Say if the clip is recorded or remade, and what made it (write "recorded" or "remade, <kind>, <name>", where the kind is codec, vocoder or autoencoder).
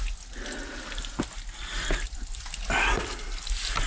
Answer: recorded